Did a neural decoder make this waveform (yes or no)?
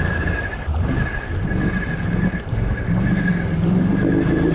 no